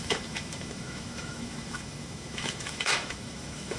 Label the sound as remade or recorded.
remade